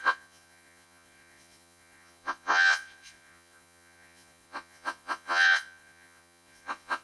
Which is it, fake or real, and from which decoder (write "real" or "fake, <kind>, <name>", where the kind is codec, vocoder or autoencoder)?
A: fake, vocoder, Vocos